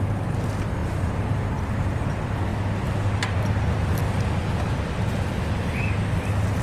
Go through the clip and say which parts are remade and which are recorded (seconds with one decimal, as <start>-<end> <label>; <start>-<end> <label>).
0.0-6.6 recorded